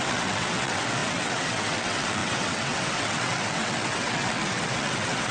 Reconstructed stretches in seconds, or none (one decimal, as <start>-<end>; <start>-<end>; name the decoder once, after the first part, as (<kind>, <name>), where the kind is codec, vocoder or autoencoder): 0.0-5.3 (vocoder, WaveNeXt)